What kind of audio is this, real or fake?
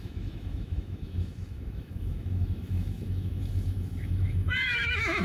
fake